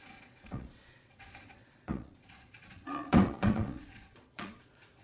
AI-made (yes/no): yes